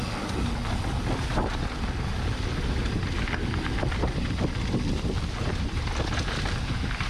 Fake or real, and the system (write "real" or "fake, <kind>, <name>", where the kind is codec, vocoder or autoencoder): real